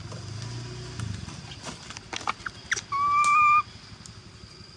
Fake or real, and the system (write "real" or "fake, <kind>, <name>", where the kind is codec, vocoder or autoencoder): real